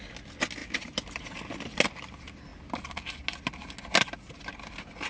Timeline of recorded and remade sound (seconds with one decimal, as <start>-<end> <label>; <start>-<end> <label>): 0.0-0.6 recorded; 0.6-1.3 remade; 1.3-5.1 recorded